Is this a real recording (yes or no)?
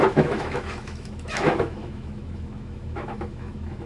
no